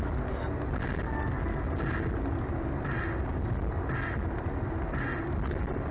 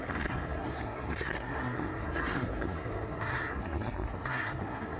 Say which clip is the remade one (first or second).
second